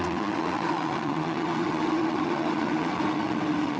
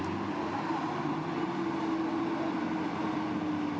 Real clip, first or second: second